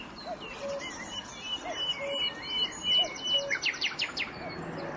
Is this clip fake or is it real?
real